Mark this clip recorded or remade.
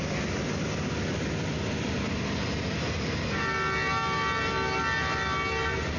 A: recorded